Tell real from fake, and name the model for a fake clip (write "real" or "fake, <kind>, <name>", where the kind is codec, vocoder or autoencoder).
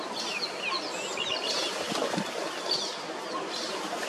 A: real